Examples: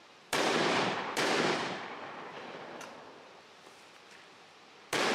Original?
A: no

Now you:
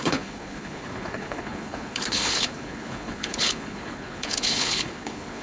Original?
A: no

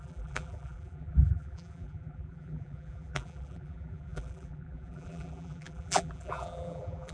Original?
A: no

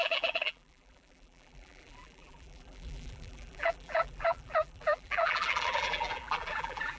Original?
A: no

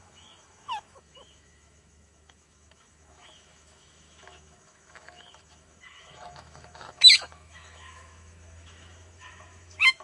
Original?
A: no